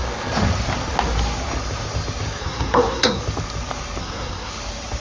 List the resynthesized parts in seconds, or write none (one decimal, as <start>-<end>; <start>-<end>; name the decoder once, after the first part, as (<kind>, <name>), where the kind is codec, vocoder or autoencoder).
2.4-3.2 (codec, SNAC); 4.0-4.5